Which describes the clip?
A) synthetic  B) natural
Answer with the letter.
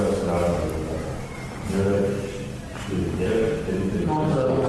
B